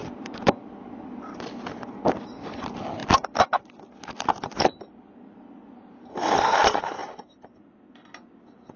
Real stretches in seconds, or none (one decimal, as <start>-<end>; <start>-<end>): 1.4-7.0; 7.8-8.8